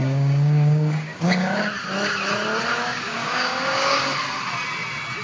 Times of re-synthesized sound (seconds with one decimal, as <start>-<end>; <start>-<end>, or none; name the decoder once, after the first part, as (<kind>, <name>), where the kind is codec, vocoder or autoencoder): 0.0-1.6 (codec, DAC); 2.7-4.0